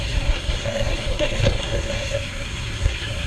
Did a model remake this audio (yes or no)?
yes